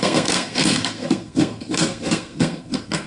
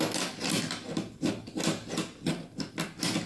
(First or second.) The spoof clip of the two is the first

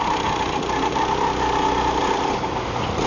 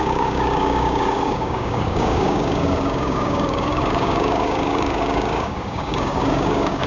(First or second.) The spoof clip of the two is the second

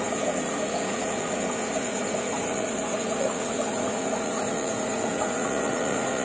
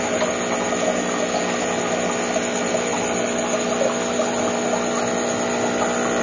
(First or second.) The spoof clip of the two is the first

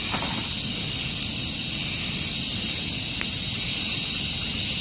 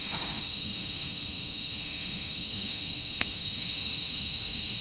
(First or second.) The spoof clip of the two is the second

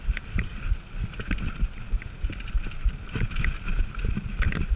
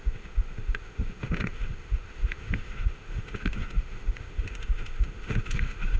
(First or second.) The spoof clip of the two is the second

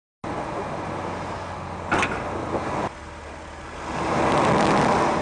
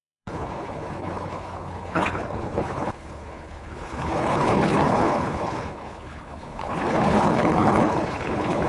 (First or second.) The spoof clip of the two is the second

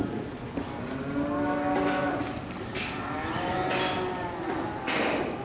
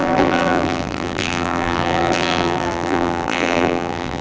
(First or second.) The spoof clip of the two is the second